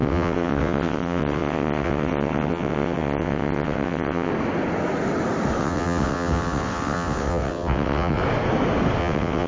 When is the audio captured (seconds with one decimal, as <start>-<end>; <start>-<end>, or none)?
4.3-5.6; 8.2-9.0